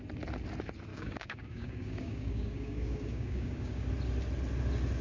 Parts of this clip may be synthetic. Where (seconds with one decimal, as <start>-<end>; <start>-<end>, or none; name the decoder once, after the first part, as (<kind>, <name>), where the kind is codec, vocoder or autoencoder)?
0.9-3.9 (codec, DAC)